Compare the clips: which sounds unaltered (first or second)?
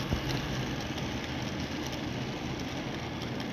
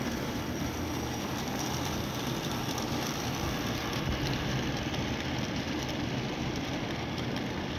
first